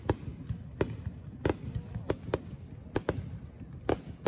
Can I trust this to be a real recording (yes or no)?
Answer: yes